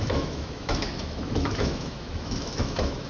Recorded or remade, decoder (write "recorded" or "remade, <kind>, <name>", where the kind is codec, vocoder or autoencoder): remade, autoencoder, DAC-VAE